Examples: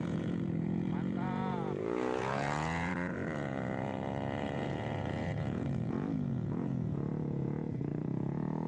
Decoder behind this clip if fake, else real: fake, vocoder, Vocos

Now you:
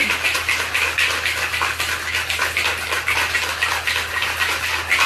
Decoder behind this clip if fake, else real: real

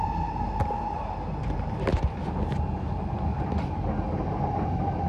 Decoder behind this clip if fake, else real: real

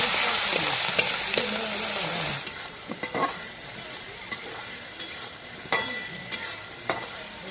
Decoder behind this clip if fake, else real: fake, vocoder, BigVGAN v2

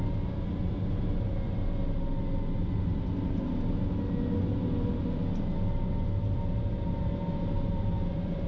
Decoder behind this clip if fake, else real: real